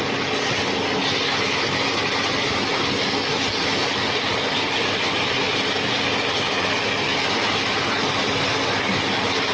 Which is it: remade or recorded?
recorded